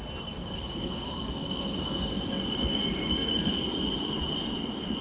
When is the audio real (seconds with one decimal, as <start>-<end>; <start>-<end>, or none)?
0.0-0.4; 3.4-5.0